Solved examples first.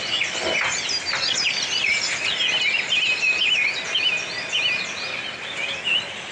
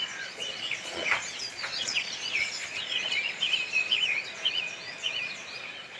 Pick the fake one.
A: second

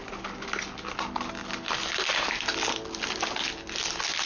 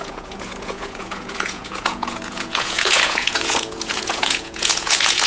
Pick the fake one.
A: second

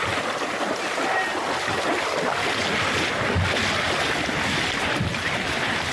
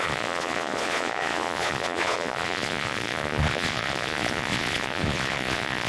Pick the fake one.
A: second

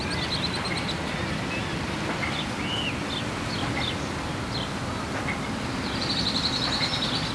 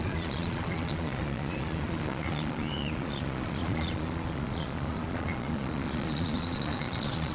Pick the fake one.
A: second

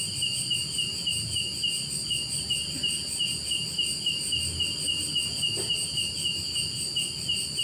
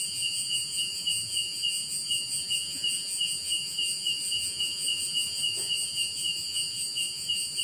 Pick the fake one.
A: second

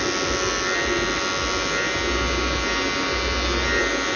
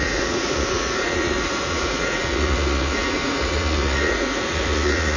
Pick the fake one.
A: second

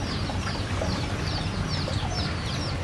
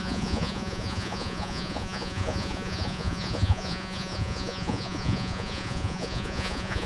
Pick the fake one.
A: second